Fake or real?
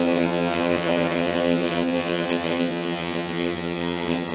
fake